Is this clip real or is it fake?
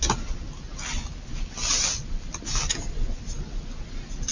real